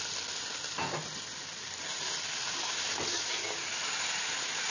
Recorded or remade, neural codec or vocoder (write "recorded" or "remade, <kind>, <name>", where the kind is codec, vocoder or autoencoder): recorded